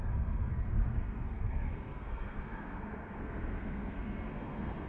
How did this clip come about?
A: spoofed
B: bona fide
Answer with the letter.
A